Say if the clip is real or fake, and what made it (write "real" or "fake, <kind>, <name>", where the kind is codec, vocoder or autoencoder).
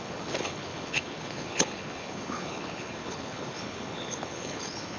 fake, codec, HILCodec